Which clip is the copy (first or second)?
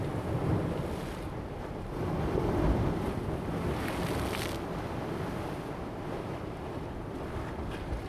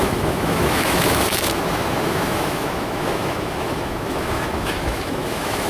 second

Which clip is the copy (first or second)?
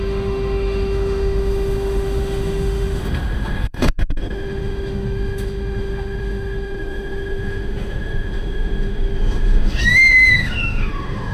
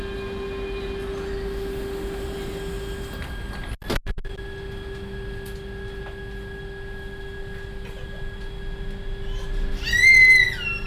first